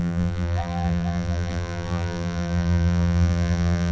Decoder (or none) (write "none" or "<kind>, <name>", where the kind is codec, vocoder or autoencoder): vocoder, BigVGAN v2